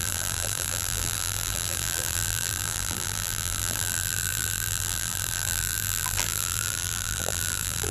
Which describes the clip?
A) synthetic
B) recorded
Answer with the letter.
A